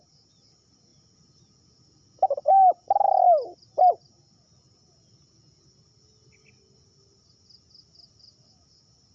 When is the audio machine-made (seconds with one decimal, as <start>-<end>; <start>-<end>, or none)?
none